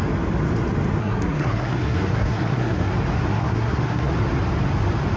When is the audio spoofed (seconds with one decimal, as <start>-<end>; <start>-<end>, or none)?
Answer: 1.0-2.9; 3.3-4.1